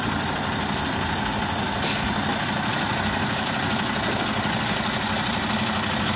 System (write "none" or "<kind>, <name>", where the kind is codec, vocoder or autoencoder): none